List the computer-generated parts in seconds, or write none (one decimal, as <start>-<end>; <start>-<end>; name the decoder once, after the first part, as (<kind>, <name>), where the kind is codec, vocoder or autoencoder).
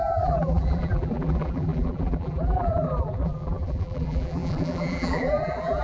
0.0-5.8 (vocoder, BigVGAN v2)